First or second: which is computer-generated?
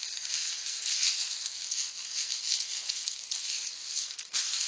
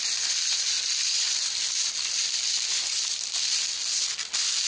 first